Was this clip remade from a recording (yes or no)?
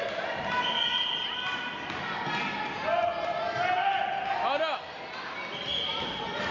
no